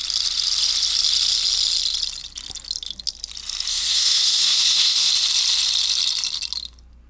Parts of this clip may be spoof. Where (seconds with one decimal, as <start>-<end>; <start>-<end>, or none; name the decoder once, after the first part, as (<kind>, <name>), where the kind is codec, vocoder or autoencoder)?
3.7-5.1 (codec, SNAC)